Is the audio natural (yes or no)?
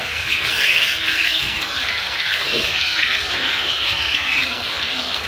no